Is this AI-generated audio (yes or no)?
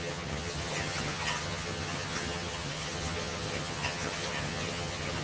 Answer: yes